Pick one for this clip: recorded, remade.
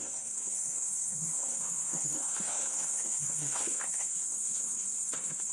remade